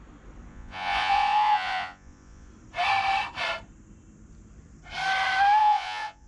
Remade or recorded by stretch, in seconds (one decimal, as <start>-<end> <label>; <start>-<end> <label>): 0.0-0.5 recorded; 0.5-2.5 remade; 2.5-5.6 recorded; 5.6-6.3 remade